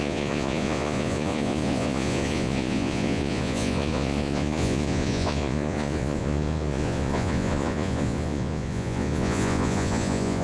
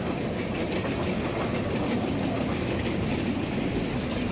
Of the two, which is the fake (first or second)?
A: first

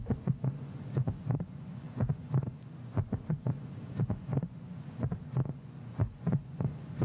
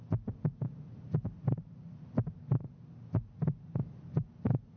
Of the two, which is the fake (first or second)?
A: first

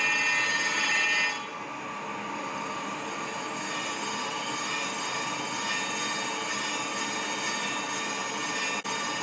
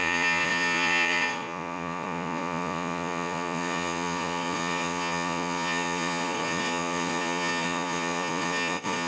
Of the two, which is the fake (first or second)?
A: second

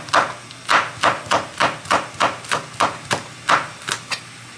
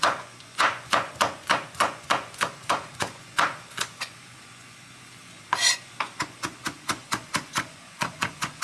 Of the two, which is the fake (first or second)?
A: second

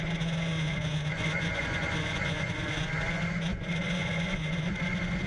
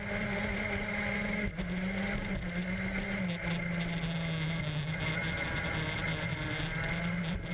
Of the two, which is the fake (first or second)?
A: first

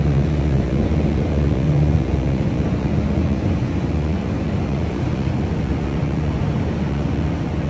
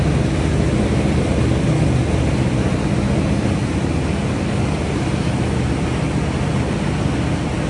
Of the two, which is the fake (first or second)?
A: first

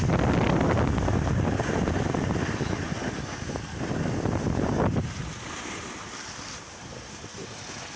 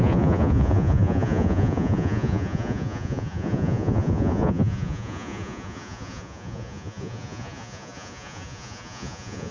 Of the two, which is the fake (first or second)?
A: second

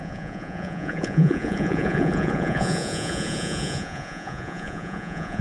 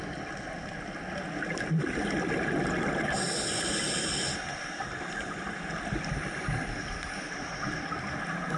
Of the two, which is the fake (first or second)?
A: first